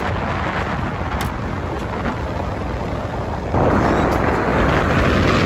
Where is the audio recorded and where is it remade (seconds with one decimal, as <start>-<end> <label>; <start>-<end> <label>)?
0.0-5.5 recorded